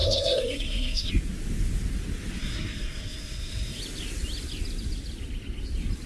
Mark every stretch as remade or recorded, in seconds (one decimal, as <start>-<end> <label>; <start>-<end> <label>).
0.0-1.1 remade; 1.1-2.4 recorded; 2.4-3.8 remade; 3.8-6.1 recorded

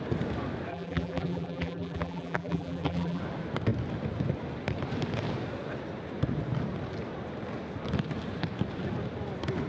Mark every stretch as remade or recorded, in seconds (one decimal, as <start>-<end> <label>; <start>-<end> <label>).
0.0-0.7 recorded; 0.7-3.2 remade; 3.2-9.7 recorded